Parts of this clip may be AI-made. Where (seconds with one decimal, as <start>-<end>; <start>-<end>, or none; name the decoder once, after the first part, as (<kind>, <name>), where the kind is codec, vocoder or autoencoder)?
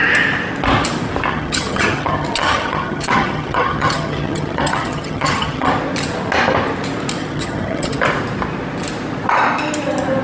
1.3-5.7 (vocoder, HiFi-GAN); 7.2-8.0